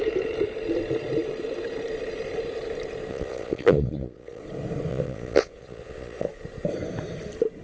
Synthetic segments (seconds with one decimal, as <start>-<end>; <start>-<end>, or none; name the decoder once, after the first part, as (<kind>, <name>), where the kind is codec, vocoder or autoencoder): 3.1-4.4 (vocoder, Vocos); 4.9-6.3

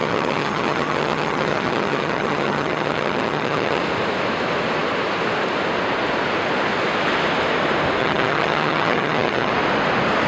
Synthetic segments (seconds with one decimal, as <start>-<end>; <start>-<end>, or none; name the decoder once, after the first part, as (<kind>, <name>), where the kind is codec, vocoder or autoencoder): 0.0-3.8 (vocoder, HiFi-GAN); 8.0-9.5

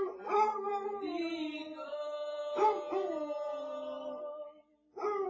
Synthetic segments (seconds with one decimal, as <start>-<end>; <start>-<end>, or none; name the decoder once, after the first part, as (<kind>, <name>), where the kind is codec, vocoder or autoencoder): none

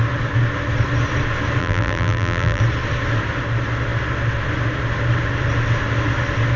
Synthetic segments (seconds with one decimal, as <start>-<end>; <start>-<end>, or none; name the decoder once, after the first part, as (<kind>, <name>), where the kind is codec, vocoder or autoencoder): 1.6-2.6 (vocoder, BigVGAN v2)

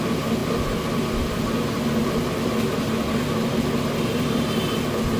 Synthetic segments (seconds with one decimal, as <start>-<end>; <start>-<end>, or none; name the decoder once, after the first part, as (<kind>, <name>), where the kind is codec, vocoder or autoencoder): none